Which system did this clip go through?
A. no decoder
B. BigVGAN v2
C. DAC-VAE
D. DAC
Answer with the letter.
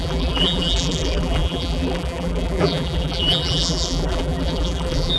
B